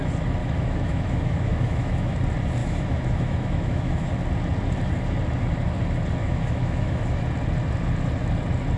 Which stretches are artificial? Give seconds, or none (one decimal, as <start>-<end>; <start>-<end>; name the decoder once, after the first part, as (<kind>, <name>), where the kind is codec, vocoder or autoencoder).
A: 0.4-2.1 (autoencoder, DAC-VAE); 2.6-4.1; 6.2-7.2